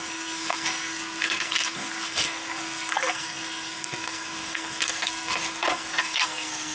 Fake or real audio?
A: fake